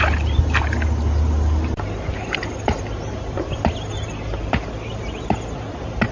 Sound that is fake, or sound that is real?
real